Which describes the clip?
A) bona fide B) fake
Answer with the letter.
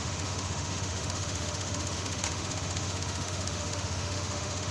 B